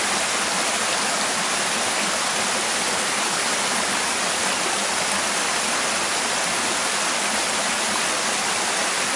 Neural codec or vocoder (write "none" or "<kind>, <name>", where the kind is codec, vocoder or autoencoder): none